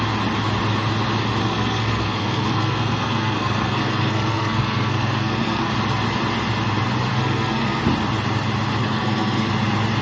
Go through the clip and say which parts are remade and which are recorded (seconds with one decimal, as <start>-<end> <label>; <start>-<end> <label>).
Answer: 0.0-1.4 recorded; 1.4-5.7 remade; 5.7-7.1 recorded; 7.1-7.8 remade; 7.8-8.8 recorded; 8.8-9.5 remade; 9.5-10.0 recorded